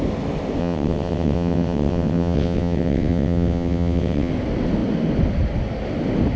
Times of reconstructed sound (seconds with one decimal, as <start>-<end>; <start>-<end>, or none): 0.6-4.3